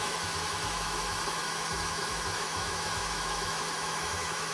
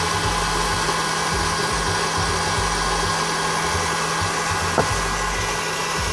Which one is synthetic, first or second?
first